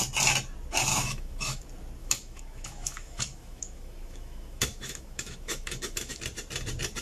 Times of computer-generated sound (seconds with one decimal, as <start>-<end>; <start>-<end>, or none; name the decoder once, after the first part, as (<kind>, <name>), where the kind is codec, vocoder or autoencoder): 0.9-1.6 (autoencoder, DAC-VAE); 2.0-6.2